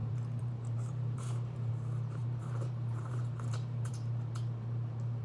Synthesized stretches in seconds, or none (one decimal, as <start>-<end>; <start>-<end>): 0.0-1.7; 2.2-3.9